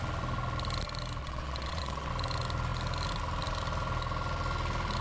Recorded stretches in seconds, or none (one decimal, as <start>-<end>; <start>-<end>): 0.0-1.2; 2.1-5.0